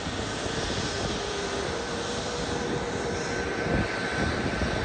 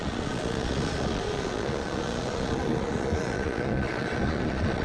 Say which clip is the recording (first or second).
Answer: first